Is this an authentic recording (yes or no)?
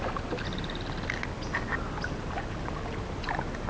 yes